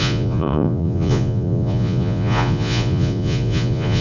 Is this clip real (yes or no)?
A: no